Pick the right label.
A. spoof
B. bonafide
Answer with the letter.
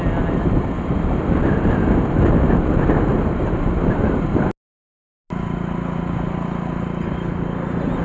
B